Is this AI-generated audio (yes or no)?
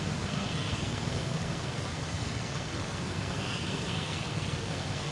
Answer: yes